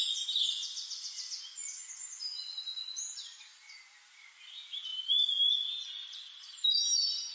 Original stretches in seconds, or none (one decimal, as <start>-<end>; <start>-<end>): 0.0-7.3

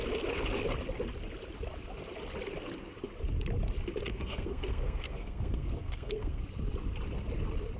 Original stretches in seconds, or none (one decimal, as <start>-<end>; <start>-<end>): 0.0-4.1; 6.4-7.8

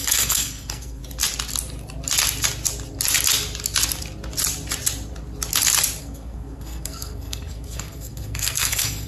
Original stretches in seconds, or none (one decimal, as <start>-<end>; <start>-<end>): 1.0-6.0

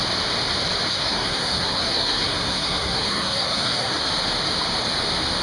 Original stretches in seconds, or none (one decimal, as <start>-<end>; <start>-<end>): 0.0-0.9; 4.1-5.4

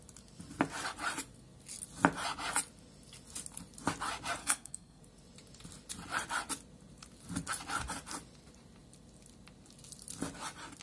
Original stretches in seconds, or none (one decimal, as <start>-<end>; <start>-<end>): 0.0-4.4; 5.0-10.8

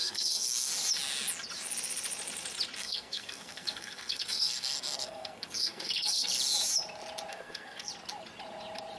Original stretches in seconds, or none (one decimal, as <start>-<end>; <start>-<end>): 0.7-2.8; 6.3-7.3; 7.9-9.0